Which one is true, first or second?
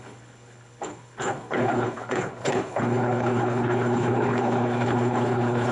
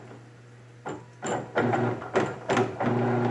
second